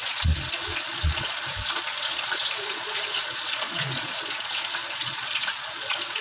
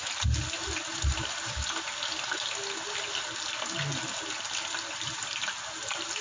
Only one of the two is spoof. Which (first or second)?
first